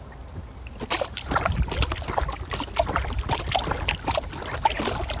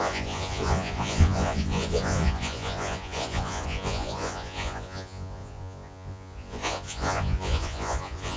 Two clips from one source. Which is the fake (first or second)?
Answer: second